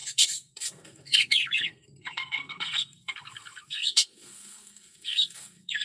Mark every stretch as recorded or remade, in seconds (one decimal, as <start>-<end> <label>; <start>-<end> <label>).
0.0-5.8 remade